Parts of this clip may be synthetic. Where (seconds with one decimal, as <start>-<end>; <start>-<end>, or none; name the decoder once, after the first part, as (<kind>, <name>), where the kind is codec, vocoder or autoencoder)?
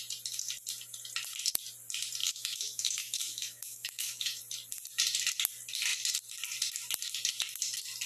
2.2-4.4 (autoencoder, DAC-VAE)